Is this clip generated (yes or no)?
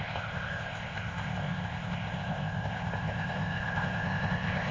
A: yes